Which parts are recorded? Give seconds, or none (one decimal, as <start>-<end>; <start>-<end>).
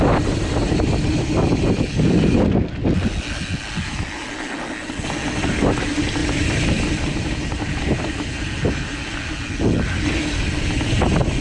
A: 0.0-6.2; 8.4-11.4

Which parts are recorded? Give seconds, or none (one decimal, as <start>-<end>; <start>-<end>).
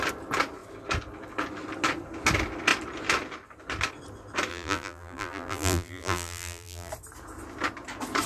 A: 0.0-4.5; 6.9-8.3